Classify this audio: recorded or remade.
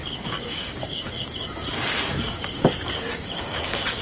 remade